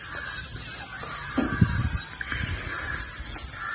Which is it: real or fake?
real